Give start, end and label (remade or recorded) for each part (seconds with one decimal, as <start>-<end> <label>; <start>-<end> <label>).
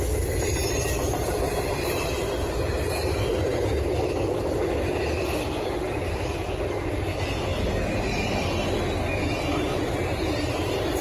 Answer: 0.0-11.0 recorded